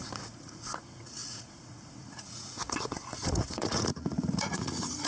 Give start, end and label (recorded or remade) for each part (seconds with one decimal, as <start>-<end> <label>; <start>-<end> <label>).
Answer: 0.0-5.1 remade